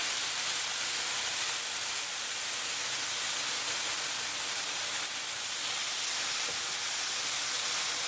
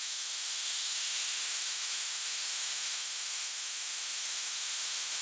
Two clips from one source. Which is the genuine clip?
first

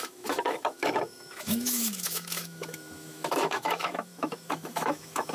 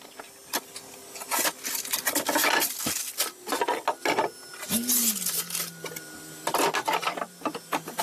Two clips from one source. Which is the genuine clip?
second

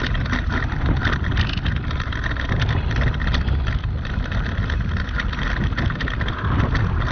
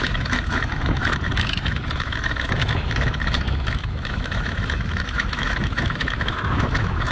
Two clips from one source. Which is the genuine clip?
first